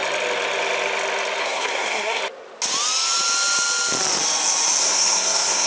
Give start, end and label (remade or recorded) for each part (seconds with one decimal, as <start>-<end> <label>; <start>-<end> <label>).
0.0-1.4 recorded; 1.4-2.2 remade; 2.2-4.8 recorded; 4.8-5.7 remade